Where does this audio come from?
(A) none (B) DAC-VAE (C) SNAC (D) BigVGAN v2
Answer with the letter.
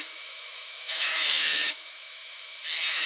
B